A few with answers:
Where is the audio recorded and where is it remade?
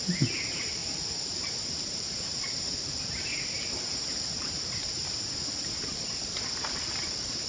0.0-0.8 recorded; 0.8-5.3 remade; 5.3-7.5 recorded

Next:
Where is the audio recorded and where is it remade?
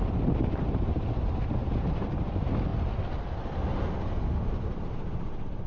0.0-5.7 recorded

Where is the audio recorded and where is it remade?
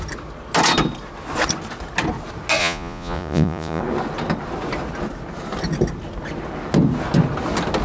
0.0-2.6 recorded; 2.6-3.8 remade; 3.8-7.8 recorded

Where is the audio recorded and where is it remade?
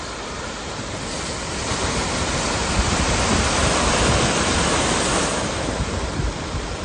0.0-1.5 remade; 1.5-3.6 recorded; 3.6-6.8 remade